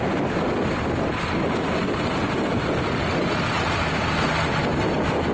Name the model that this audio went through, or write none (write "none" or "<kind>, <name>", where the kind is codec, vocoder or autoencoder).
none